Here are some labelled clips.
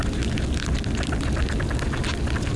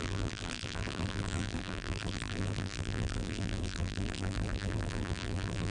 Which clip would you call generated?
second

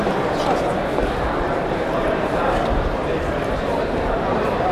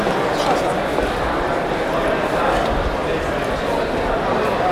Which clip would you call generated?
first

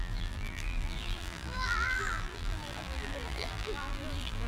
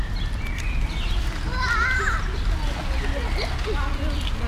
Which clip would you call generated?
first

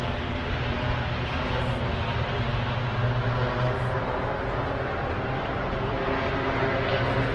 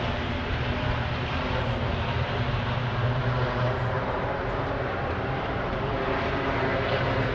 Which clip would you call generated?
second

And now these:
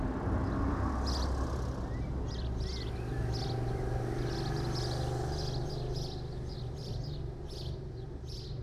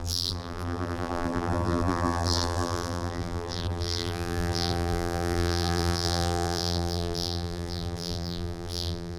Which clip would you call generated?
second